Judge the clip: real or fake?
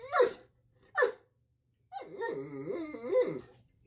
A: real